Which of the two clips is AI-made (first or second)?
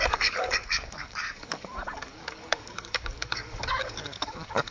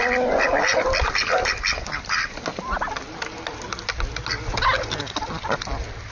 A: first